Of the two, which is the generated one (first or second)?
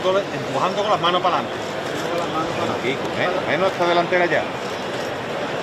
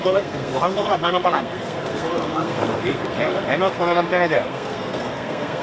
second